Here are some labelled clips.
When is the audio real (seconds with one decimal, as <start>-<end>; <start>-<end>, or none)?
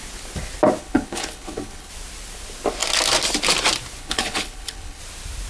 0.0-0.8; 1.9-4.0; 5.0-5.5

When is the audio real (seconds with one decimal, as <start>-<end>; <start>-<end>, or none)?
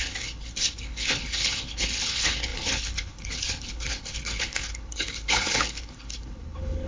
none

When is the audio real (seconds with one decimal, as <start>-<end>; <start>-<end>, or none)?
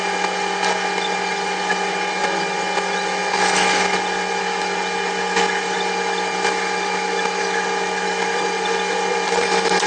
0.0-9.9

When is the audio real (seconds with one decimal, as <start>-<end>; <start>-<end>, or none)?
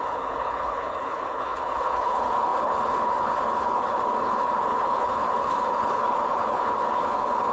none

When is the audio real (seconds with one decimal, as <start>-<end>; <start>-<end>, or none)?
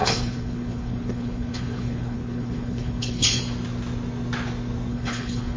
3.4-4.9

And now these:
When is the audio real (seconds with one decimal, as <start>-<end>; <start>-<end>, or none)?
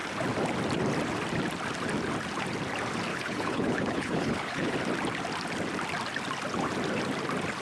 0.0-3.1; 4.7-7.6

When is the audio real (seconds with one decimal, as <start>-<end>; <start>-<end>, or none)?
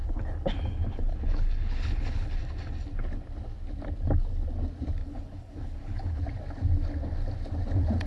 2.4-5.0; 6.2-8.1